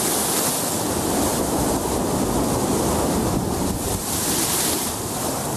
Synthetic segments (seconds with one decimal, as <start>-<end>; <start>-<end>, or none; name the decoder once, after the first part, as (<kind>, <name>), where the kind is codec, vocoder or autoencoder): none